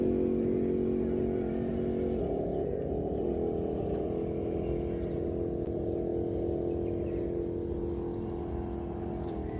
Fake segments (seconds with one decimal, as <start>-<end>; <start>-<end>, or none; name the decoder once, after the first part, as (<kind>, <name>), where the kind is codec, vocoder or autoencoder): none